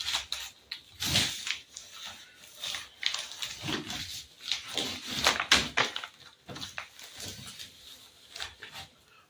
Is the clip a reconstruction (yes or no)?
no